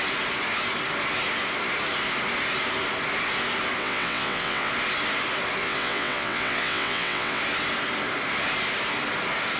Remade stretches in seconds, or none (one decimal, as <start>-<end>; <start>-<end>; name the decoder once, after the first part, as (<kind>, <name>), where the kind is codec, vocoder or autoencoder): 3.8-4.7 (vocoder, WaveNeXt); 5.6-7.4